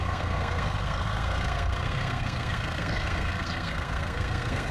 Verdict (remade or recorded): remade